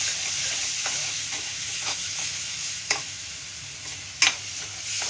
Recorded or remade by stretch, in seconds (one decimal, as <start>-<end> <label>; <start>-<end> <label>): 0.0-1.0 recorded; 1.0-3.4 remade; 3.4-5.1 recorded

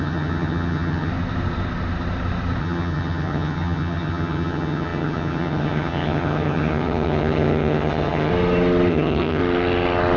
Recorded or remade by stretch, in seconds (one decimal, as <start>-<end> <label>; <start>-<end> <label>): 0.0-1.1 remade; 1.1-2.6 recorded; 2.6-8.3 remade; 8.3-8.9 recorded; 8.9-9.4 remade; 9.4-10.2 recorded

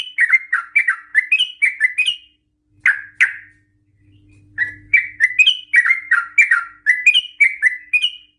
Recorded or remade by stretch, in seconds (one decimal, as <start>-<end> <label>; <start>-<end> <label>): 0.0-8.4 recorded

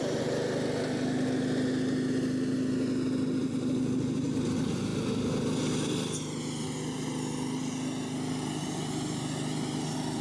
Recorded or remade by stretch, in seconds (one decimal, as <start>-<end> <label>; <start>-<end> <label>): 0.0-10.2 recorded

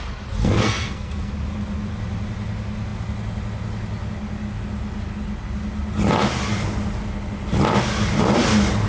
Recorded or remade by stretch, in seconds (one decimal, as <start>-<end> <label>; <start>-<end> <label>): 0.0-0.4 recorded; 0.4-1.3 remade; 1.3-8.9 recorded

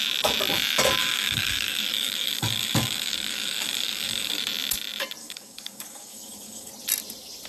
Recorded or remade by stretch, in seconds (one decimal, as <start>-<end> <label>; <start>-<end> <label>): 0.0-1.0 recorded; 1.0-4.4 remade; 4.4-5.2 recorded; 5.2-6.7 remade; 6.7-7.5 recorded

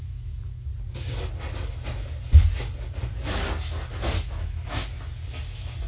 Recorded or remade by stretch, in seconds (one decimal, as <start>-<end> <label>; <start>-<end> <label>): 0.0-0.7 remade; 0.7-4.2 recorded; 4.2-4.8 remade; 4.8-5.9 recorded